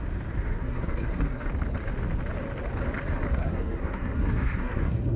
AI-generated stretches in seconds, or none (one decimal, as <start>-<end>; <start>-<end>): 0.6-1.5; 3.3-5.2